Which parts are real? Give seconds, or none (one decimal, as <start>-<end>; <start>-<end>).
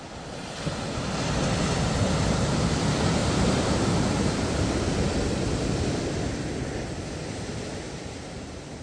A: 0.0-3.2; 4.6-8.8